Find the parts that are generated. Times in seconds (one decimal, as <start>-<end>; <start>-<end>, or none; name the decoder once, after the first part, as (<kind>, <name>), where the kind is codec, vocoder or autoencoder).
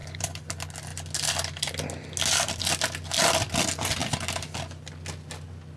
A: 0.0-0.5 (vocoder, BigVGAN v2)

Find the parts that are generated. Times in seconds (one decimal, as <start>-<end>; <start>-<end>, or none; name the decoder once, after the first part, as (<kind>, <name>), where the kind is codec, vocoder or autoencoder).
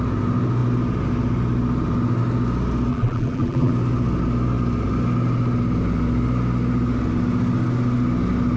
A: 2.9-3.7 (vocoder, BigVGAN v2)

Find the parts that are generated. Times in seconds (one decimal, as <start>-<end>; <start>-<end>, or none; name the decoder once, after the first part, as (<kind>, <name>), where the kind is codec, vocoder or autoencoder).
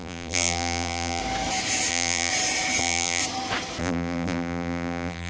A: 0.0-1.2 (vocoder, BigVGAN v2); 1.9-2.3; 2.8-3.2; 3.8-5.3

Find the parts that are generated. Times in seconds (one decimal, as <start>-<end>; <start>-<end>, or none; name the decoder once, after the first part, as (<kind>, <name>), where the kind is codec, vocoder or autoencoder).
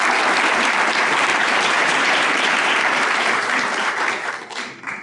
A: 1.3-4.3 (vocoder, BigVGAN v2)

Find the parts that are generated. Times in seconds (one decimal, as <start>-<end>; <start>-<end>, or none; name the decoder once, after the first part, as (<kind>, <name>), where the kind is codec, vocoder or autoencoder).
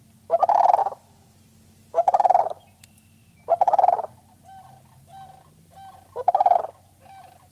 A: 0.8-4.1 (vocoder, BigVGAN v2)